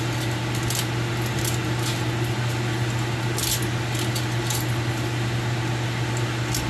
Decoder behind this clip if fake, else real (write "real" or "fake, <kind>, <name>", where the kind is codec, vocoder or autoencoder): real